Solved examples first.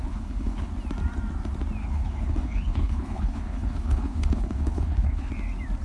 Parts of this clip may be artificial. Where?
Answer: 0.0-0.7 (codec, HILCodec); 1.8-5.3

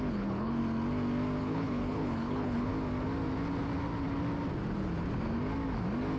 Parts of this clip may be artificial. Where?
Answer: 0.0-0.6 (codec, HILCodec); 1.4-2.7